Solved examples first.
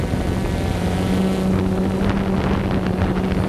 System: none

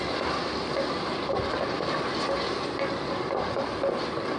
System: none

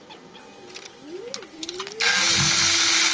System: none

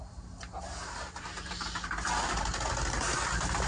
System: none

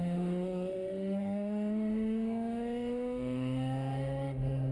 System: autoencoder, DAC-VAE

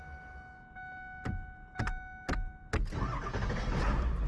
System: none